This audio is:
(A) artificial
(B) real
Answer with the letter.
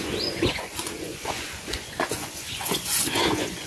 A